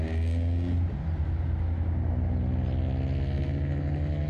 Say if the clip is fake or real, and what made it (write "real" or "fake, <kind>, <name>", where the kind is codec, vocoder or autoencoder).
real